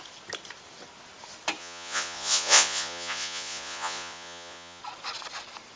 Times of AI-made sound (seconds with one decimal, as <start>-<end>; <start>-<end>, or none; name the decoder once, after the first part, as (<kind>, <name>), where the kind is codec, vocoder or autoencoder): 1.6-4.8 (vocoder, Vocos)